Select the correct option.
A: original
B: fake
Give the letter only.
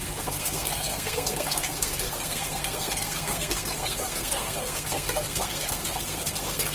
B